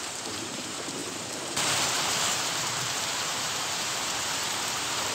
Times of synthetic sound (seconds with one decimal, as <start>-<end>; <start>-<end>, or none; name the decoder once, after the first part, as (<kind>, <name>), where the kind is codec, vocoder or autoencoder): 0.0-5.1 (vocoder, BigVGAN v2)